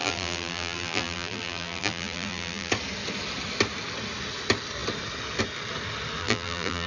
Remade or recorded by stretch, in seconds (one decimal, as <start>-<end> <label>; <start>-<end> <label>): 0.0-2.7 remade; 2.7-6.2 recorded; 6.2-6.9 remade